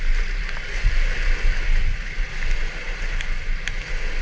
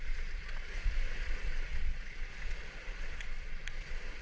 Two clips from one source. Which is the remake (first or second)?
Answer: second